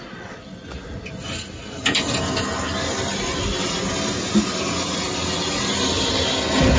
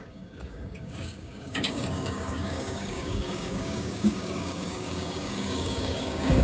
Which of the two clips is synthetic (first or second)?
second